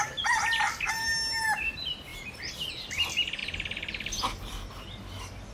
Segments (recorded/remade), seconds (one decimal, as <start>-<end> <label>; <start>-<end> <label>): 0.0-2.1 recorded; 2.1-2.7 remade; 2.7-3.4 recorded; 3.4-4.3 remade; 4.3-5.5 recorded

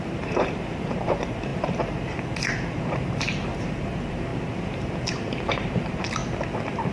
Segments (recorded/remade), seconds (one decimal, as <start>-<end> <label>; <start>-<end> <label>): 0.0-6.2 remade; 6.2-6.9 recorded

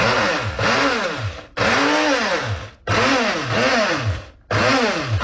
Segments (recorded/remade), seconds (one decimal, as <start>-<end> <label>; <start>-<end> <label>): 0.0-5.2 recorded